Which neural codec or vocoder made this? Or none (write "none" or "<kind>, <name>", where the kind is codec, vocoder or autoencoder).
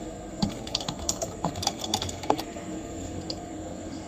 codec, SNAC